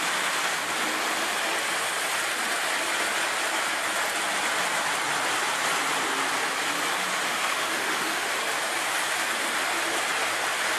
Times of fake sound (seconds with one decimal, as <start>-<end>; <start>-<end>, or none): 7.3-8.3